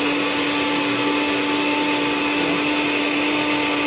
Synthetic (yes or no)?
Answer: no